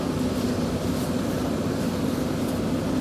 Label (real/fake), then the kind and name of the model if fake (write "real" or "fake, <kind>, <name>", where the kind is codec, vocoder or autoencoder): real